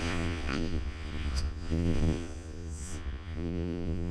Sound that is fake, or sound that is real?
fake